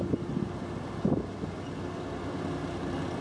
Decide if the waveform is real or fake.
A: real